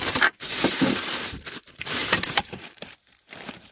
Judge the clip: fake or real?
fake